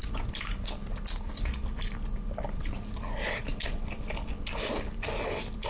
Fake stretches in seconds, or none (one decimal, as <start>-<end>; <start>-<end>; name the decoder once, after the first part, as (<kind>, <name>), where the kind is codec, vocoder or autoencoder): none